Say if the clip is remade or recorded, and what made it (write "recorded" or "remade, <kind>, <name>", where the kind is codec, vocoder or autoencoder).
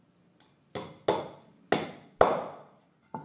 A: recorded